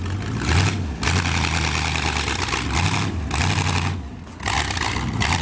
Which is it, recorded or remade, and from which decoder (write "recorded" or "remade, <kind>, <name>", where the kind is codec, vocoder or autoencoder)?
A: recorded